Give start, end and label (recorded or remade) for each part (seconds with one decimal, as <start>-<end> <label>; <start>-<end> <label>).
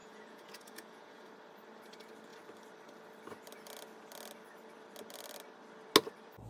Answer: 0.0-1.3 remade; 1.3-6.5 recorded